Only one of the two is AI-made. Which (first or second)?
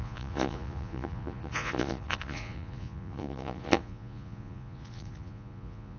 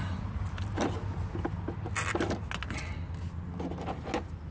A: first